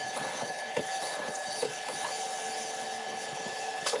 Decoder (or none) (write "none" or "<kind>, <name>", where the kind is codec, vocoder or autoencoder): codec, HILCodec